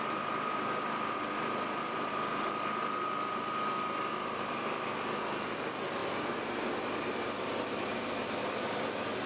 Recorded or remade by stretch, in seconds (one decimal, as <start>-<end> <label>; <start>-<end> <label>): 0.0-9.3 recorded